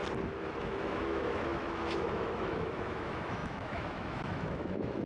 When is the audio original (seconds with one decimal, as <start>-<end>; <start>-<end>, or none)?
0.0-0.6

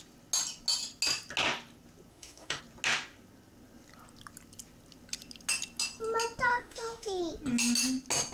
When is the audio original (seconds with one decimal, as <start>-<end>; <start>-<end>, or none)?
0.0-2.1; 2.6-6.5; 7.2-8.3